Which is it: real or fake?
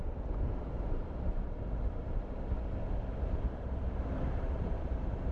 fake